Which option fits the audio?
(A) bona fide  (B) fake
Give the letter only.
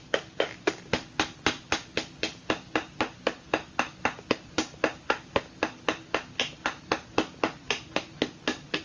A